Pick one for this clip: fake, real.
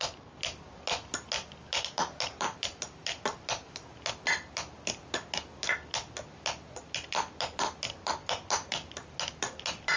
real